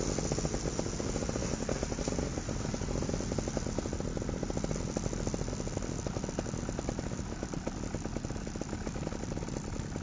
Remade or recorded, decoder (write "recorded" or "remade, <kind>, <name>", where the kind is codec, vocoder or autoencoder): recorded